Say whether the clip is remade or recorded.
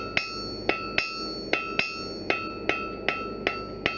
recorded